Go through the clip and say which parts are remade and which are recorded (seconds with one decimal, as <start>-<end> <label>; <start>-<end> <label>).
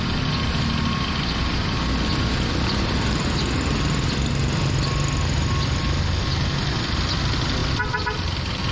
0.0-8.7 recorded